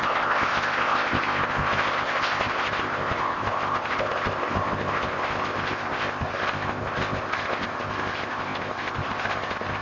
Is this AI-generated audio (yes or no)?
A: yes